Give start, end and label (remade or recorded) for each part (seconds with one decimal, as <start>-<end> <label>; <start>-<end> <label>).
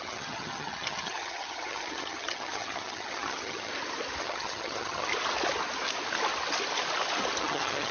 0.0-3.7 remade; 3.7-4.2 recorded; 4.2-5.1 remade; 5.1-7.4 recorded; 7.4-7.9 remade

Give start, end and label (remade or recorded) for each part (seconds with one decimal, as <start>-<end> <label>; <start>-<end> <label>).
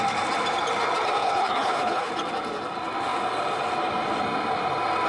0.0-1.2 recorded; 1.2-2.1 remade; 2.1-5.1 recorded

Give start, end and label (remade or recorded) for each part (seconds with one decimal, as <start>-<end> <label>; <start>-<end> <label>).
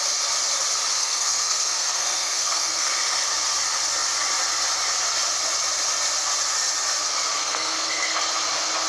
0.0-1.0 recorded; 1.0-2.9 remade; 2.9-7.4 recorded; 7.4-8.3 remade; 8.3-8.9 recorded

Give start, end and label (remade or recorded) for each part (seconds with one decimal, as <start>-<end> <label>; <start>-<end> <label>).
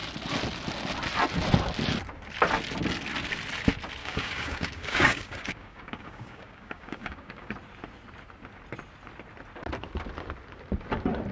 0.0-4.0 recorded; 4.0-7.5 remade; 7.5-11.3 recorded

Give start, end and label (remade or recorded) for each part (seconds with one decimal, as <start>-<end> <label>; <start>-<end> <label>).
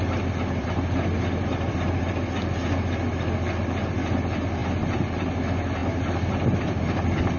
0.0-0.6 recorded; 0.6-2.0 remade; 2.0-7.4 recorded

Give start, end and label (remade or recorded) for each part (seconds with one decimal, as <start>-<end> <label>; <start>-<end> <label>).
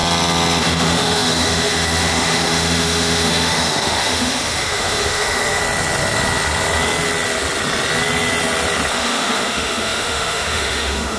0.0-0.6 recorded; 0.6-5.6 remade; 5.6-8.9 recorded; 8.9-11.2 remade